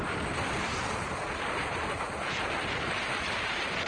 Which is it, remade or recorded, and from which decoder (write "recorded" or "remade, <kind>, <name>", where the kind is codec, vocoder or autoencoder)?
recorded